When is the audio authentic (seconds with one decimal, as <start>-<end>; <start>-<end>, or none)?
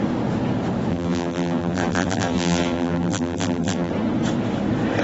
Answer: 0.0-0.9; 3.9-5.0